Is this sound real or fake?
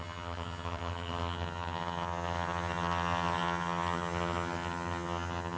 fake